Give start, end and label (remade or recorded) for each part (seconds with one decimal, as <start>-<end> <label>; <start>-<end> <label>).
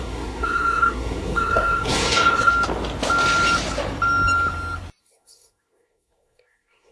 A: 0.0-2.5 remade; 2.5-5.0 recorded; 5.0-6.9 remade